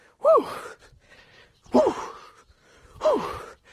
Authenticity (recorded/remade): remade